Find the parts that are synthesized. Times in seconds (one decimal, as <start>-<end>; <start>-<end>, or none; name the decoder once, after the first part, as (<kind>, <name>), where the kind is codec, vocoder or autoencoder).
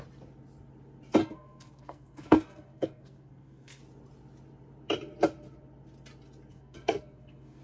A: 1.2-3.8 (codec, SNAC); 6.5-7.6